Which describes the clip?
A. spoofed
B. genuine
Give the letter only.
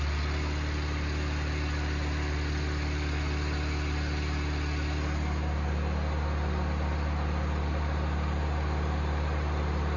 B